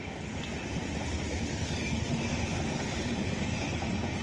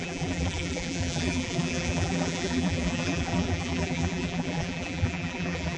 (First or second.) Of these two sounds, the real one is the first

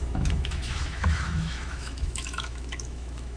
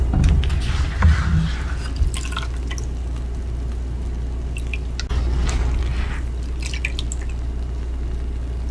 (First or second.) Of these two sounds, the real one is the second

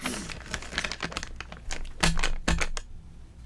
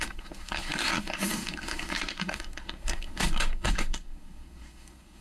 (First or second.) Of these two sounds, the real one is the first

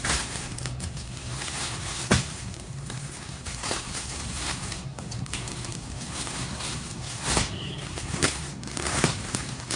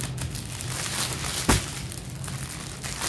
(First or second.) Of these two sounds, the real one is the second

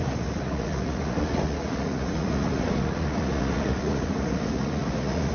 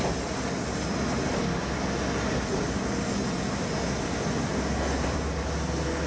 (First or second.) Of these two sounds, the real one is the second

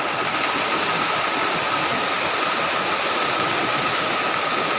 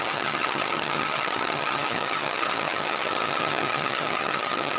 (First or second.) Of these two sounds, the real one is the first